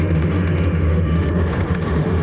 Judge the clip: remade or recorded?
remade